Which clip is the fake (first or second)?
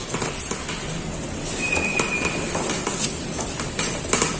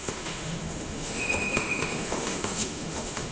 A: second